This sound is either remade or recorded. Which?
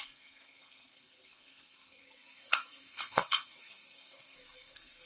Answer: remade